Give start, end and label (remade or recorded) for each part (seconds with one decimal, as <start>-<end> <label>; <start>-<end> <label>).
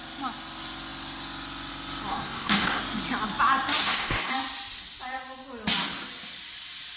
0.0-2.1 recorded; 2.1-2.8 remade; 2.8-3.8 recorded; 3.8-4.3 remade; 4.3-7.0 recorded